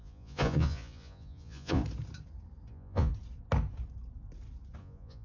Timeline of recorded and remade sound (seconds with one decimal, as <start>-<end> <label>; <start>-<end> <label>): 0.0-1.8 remade; 1.8-2.7 recorded; 2.7-3.1 remade; 3.1-4.8 recorded; 4.8-5.2 remade